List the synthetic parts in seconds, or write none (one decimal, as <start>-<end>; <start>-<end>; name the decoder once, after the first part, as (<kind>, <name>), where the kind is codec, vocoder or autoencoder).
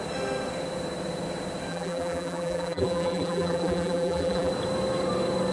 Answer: 1.7-4.5 (vocoder, BigVGAN v2)